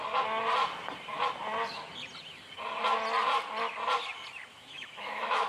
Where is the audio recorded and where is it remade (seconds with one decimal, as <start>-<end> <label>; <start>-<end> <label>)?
0.0-4.5 recorded; 4.5-5.5 remade